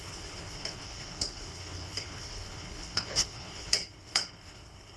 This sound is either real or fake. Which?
fake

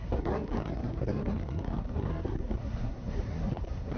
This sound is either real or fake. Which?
fake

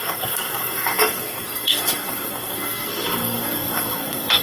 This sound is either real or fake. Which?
fake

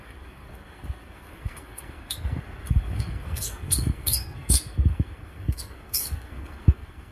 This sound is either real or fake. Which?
fake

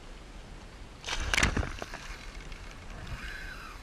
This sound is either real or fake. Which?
real